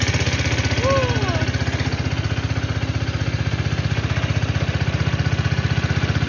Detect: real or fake real